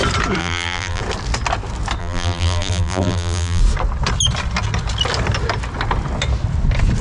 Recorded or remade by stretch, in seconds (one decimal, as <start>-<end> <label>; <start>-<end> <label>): 0.0-0.4 recorded; 0.4-1.0 remade; 1.0-2.0 recorded; 2.0-3.6 remade; 3.6-7.0 recorded